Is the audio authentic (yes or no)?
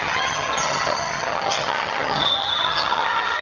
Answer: no